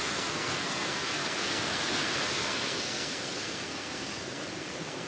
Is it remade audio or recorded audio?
remade